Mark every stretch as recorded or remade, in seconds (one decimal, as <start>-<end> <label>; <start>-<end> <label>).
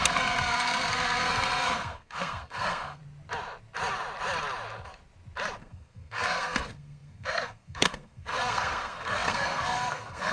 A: 0.0-3.0 remade; 3.0-5.6 recorded; 5.6-10.3 remade